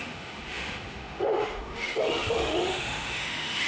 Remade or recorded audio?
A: remade